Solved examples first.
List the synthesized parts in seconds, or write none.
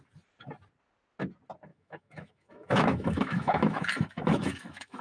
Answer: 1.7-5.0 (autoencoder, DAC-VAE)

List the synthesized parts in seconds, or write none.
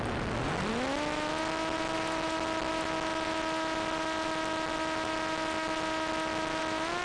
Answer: none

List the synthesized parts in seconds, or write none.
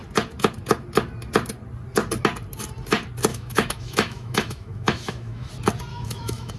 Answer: 3.3-5.5 (autoencoder, DAC-VAE); 5.9-6.6